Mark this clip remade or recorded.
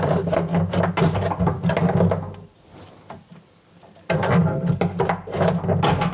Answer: recorded